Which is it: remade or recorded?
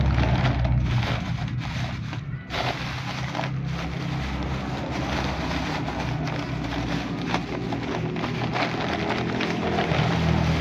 recorded